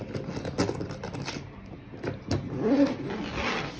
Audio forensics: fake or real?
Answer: real